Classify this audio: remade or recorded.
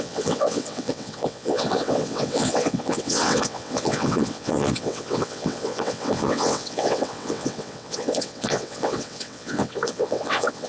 remade